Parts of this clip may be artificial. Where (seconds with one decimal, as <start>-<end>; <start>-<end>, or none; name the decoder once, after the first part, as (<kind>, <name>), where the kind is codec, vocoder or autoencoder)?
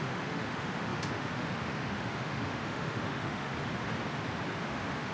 0.0-3.5 (autoencoder, DAC-VAE); 4.6-5.1